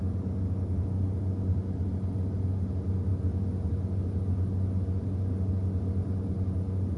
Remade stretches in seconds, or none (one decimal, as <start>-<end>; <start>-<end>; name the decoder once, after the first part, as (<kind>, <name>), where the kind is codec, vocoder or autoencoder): none